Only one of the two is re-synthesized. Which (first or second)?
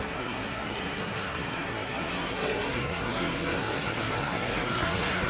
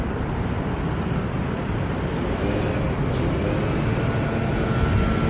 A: first